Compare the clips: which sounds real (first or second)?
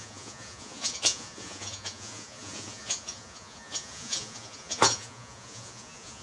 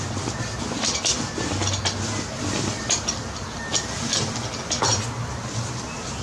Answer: second